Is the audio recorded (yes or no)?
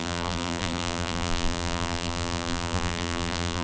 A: no